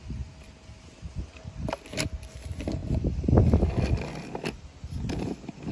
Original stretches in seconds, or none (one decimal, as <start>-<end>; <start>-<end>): 0.0-5.7